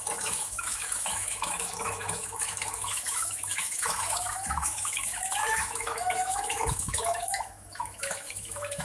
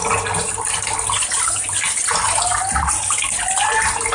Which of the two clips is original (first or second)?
second